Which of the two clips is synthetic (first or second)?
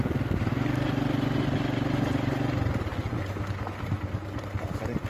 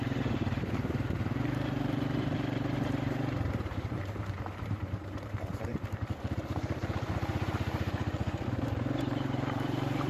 second